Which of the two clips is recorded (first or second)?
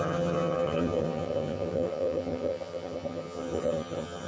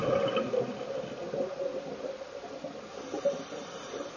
second